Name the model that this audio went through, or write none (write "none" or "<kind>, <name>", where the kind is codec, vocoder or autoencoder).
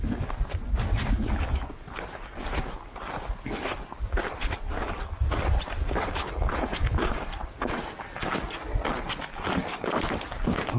none